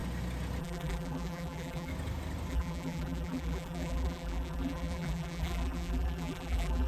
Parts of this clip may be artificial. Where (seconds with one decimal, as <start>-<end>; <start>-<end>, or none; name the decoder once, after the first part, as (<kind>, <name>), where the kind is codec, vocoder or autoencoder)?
0.6-1.9 (vocoder, BigVGAN v2); 2.5-6.9